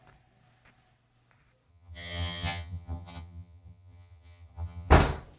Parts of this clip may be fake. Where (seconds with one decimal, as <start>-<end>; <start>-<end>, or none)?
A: 1.7-4.9